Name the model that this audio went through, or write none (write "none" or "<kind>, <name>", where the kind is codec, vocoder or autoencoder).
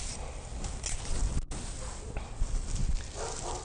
none